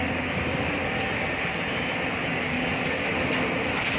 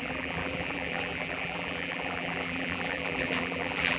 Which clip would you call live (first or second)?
first